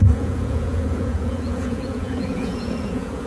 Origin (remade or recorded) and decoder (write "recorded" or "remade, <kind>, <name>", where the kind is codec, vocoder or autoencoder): remade, vocoder, Vocos